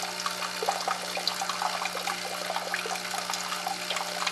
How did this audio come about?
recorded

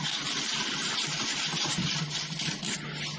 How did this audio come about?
recorded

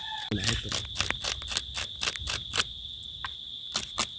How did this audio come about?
recorded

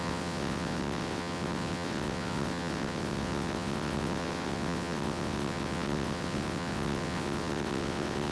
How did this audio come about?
remade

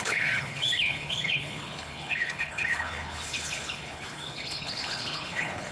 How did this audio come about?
remade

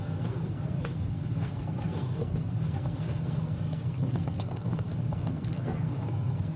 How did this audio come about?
remade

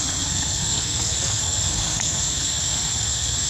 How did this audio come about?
remade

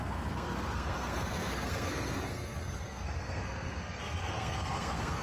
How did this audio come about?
remade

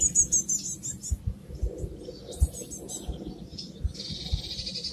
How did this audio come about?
recorded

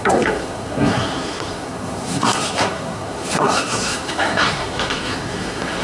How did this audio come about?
remade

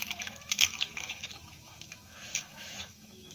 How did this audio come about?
remade